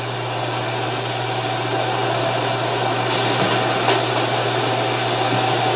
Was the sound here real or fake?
real